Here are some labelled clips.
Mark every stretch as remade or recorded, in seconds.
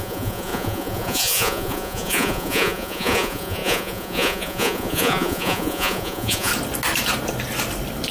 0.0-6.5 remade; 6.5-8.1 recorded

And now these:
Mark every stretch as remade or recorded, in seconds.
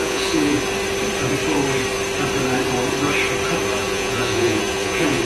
0.0-0.6 remade; 0.6-3.8 recorded; 3.8-5.2 remade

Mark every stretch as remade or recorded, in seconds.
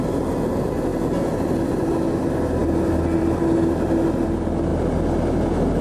0.0-5.8 recorded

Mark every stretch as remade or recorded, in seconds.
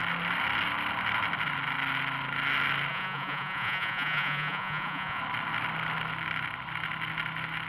0.0-2.9 recorded; 2.9-5.2 remade; 5.2-7.7 recorded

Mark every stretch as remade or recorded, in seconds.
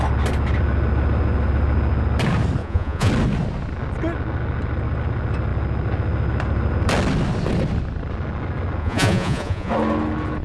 0.0-2.6 recorded; 2.6-3.1 remade; 3.1-8.8 recorded; 8.8-9.7 remade; 9.7-10.4 recorded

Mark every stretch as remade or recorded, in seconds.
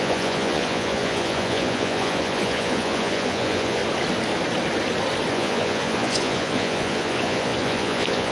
0.0-3.8 remade; 3.8-5.3 recorded; 5.3-8.3 remade